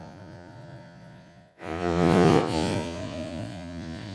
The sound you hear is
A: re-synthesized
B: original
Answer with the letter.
A